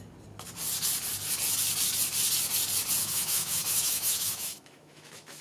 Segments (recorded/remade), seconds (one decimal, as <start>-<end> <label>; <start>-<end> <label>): 0.0-3.0 recorded; 3.0-5.4 remade

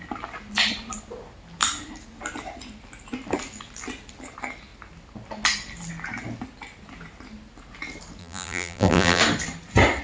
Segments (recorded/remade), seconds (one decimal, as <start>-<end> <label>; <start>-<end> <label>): 0.0-8.2 recorded; 8.2-9.2 remade; 9.2-10.0 recorded

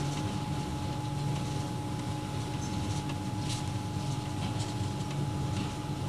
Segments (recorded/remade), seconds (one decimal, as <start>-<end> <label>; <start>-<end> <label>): 0.0-6.1 recorded

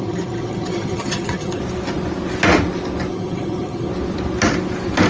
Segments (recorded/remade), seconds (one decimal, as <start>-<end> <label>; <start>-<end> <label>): 0.0-1.6 remade; 1.6-3.1 recorded; 3.1-3.9 remade; 3.9-5.1 recorded

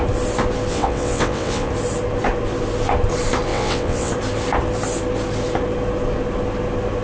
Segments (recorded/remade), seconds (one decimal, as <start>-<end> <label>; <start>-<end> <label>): 0.0-0.7 recorded; 0.7-1.7 remade; 1.7-3.5 recorded; 3.5-4.1 remade; 4.1-7.0 recorded

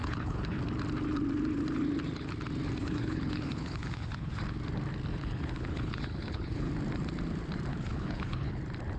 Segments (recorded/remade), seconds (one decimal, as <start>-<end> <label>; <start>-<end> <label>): 0.0-0.6 remade; 0.6-2.8 recorded; 2.8-4.4 remade; 4.4-5.1 recorded; 5.1-6.7 remade; 6.7-7.7 recorded; 7.7-8.6 remade; 8.6-9.0 recorded

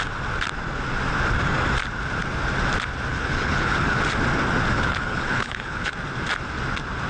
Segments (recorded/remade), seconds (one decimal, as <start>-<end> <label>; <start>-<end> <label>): 0.0-3.1 recorded; 3.1-4.0 remade; 4.0-4.7 recorded; 4.7-5.9 remade; 5.9-7.1 recorded

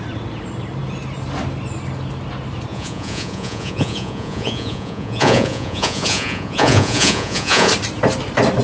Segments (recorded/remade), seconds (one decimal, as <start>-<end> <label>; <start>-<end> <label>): 0.0-2.7 recorded; 2.7-7.7 remade; 7.7-8.6 recorded